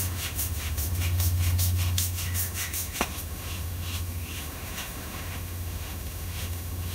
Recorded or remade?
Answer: remade